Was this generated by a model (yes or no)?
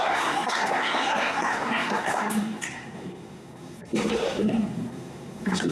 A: yes